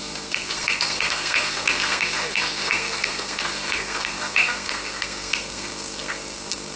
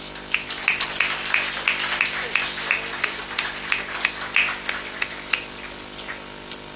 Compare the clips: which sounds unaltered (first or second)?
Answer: second